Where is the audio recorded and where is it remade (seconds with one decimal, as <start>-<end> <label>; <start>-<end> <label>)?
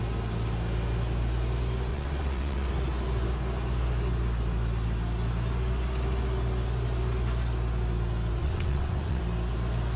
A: 0.0-1.9 recorded; 1.9-2.7 remade; 2.7-8.4 recorded; 8.4-9.2 remade; 9.2-10.0 recorded